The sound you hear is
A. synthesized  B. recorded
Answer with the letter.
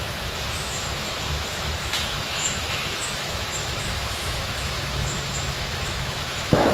A